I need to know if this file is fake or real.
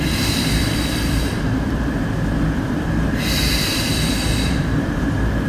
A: fake